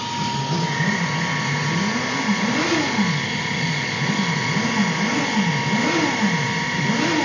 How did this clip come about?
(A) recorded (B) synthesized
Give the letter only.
A